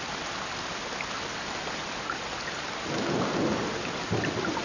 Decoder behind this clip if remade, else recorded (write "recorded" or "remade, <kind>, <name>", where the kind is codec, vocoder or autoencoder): recorded